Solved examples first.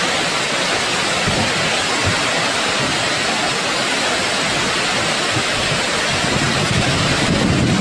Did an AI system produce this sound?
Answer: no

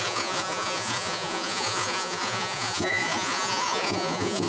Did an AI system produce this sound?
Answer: yes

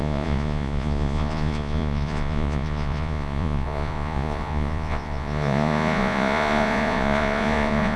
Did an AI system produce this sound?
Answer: yes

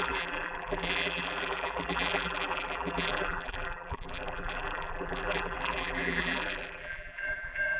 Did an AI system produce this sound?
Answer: yes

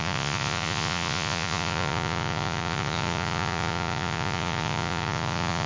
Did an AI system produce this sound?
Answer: yes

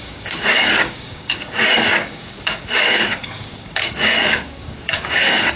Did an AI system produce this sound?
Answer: yes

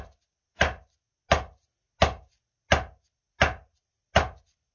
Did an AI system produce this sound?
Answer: no